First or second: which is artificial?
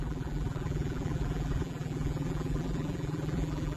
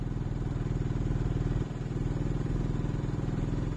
first